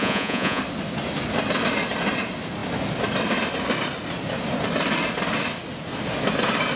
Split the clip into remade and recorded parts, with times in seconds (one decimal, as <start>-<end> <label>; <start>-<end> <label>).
0.0-0.6 remade; 0.6-6.8 recorded